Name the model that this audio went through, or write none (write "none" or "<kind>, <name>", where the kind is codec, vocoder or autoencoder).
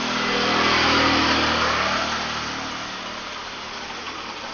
none